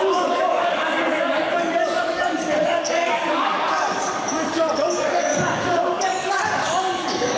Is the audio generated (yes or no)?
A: yes